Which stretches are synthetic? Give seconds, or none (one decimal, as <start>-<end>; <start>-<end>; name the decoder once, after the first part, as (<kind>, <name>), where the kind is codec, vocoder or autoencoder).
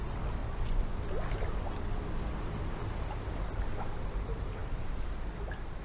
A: 0.4-0.9 (vocoder, Vocos)